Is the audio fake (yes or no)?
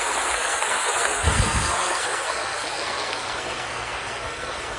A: yes